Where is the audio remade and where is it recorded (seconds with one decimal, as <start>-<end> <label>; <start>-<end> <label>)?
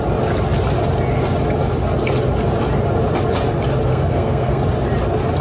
0.0-3.9 recorded; 3.9-4.6 remade; 4.6-5.4 recorded